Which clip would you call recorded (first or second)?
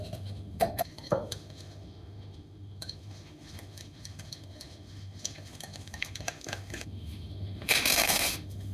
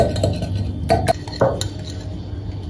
second